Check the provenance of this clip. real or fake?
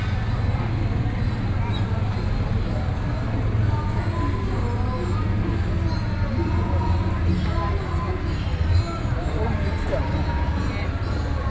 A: real